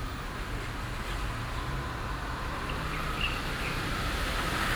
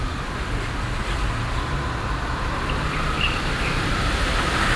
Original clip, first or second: first